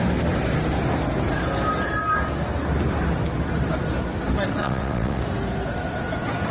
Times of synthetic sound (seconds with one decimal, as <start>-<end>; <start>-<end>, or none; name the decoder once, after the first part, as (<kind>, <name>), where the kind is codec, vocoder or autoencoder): 4.6-5.2 (vocoder, WaveNeXt)